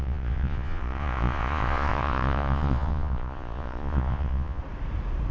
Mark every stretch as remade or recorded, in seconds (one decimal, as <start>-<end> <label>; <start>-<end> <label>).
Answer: 0.0-4.6 remade; 4.6-5.3 recorded